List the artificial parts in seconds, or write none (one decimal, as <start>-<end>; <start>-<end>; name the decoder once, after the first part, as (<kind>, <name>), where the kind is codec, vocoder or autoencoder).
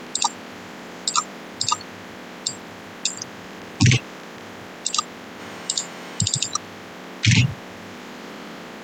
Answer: 5.4-6.2 (autoencoder, DAC-VAE)